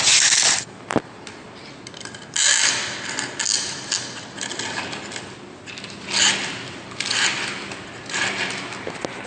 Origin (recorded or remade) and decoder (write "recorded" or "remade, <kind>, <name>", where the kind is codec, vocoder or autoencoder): recorded